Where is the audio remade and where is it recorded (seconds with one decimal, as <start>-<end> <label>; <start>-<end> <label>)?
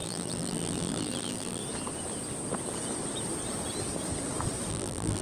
0.0-1.6 remade; 1.6-4.7 recorded; 4.7-5.2 remade